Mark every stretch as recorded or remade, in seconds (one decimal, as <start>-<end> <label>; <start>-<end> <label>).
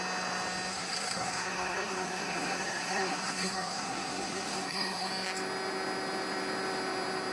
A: 0.0-0.7 recorded; 0.7-5.1 remade; 5.1-7.3 recorded